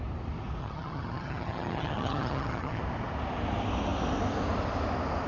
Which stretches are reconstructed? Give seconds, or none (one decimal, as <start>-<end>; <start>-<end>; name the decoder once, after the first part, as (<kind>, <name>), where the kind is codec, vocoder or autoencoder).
0.6-2.8 (vocoder, HiFi-GAN)